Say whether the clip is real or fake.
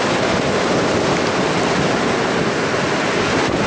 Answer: real